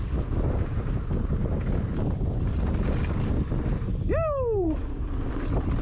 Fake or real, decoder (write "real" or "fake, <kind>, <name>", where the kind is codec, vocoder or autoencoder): real